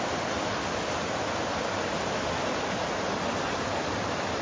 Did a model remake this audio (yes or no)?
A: yes